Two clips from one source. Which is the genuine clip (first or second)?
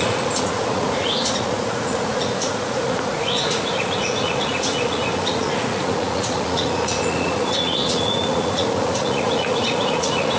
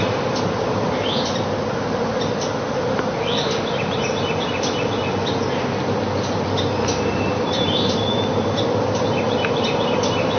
second